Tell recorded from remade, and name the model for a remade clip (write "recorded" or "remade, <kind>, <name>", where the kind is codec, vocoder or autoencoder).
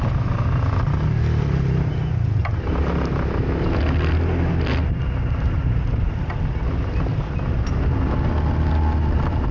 recorded